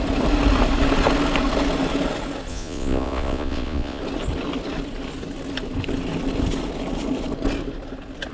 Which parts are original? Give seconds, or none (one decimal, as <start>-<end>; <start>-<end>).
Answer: 0.0-2.5; 4.0-8.3